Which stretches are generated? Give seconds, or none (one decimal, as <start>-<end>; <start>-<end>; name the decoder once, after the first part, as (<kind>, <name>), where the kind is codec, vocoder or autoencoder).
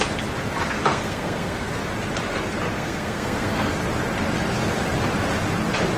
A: 0.9-1.7 (codec, SNAC); 2.7-3.7